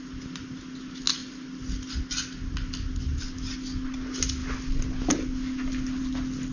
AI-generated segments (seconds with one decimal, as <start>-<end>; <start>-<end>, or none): none

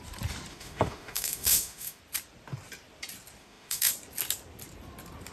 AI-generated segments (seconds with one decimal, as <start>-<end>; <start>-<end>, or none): 0.5-2.0; 3.4-3.9

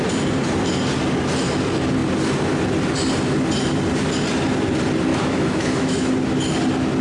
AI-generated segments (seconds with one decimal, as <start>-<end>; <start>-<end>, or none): 5.1-6.1

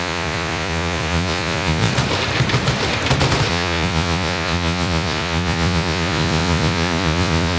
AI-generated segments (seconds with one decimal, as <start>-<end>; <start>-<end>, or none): 0.0-1.9; 3.5-7.6

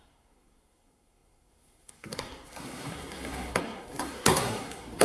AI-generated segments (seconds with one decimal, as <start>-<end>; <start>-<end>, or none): 0.0-5.0

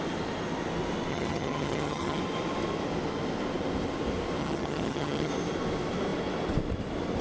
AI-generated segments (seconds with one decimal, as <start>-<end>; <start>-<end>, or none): 1.1-2.2; 4.4-5.3

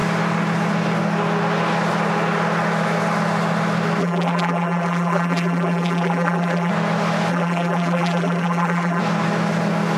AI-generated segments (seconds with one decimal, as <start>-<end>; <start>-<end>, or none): 4.0-6.7; 7.3-9.0

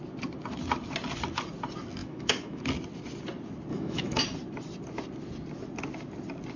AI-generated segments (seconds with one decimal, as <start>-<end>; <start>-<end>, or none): 2.0-2.6; 3.7-4.2